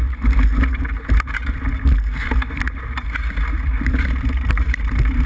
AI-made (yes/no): no